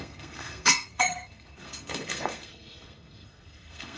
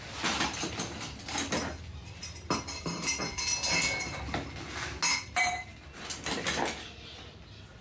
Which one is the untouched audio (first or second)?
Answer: second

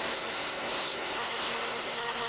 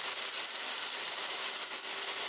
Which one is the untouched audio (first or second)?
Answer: second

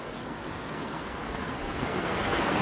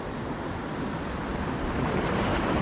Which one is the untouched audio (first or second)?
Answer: second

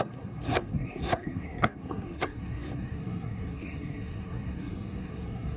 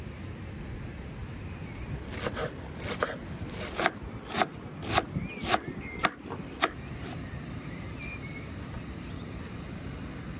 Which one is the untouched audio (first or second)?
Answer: second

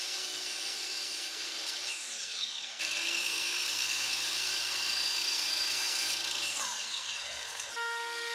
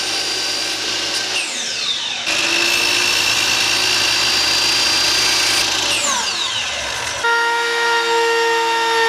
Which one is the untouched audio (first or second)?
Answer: second